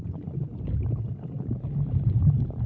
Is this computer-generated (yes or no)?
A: no